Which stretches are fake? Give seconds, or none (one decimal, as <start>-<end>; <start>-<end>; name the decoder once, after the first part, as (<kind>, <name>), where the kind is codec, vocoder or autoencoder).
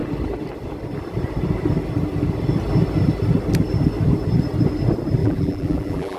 5.2-6.2 (vocoder, BigVGAN v2)